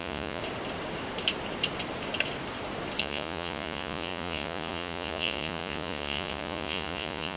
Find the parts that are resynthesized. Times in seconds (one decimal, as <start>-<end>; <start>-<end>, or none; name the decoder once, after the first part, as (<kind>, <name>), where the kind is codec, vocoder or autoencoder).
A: 0.0-0.4 (vocoder, Vocos); 3.0-7.4